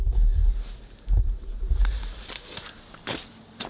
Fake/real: fake